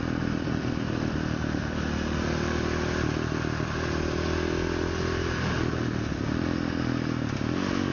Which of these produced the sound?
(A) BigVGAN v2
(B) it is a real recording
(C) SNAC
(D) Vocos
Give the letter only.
B